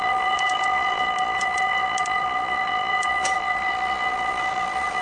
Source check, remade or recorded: remade